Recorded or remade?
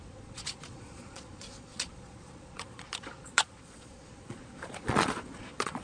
remade